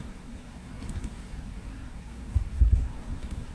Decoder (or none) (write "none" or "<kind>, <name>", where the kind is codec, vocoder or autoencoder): codec, SNAC